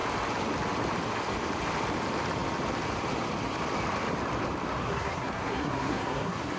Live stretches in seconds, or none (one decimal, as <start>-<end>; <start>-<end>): 0.0-4.8